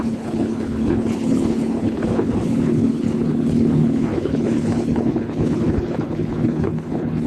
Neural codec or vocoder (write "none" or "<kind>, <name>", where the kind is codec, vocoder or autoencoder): codec, HILCodec